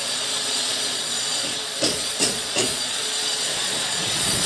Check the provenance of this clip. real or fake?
fake